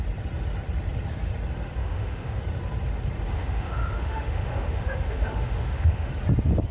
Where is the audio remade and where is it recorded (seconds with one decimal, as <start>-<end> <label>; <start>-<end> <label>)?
0.0-1.8 recorded; 1.8-2.4 remade; 2.4-3.4 recorded; 3.4-6.1 remade; 6.1-6.7 recorded